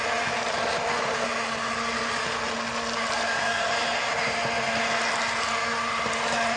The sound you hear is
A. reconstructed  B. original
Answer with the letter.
B